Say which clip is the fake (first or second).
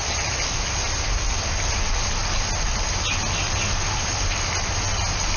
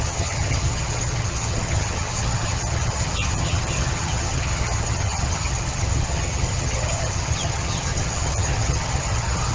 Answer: second